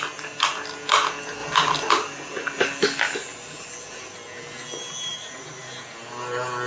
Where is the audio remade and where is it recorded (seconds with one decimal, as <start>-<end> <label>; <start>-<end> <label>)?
0.0-1.4 recorded; 1.4-1.9 remade; 1.9-5.1 recorded; 5.1-5.8 remade; 5.8-6.7 recorded